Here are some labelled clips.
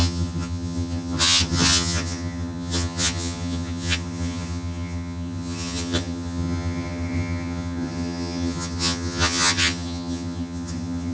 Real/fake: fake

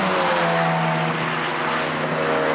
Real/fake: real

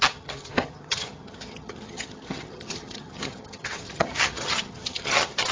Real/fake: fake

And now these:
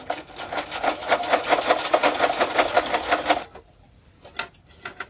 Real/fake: real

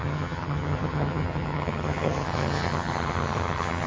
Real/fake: fake